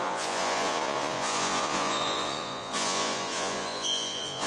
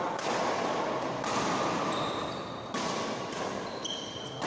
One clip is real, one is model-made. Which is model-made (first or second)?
first